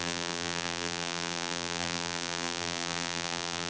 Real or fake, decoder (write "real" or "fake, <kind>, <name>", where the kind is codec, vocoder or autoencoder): fake, vocoder, BigVGAN v2